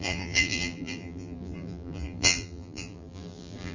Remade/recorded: remade